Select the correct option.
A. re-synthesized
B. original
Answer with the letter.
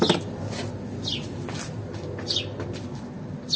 B